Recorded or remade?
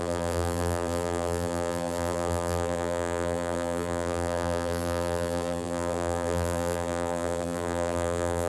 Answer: remade